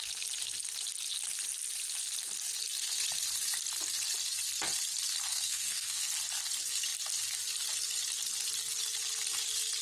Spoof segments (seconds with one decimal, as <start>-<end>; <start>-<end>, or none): 5.3-6.0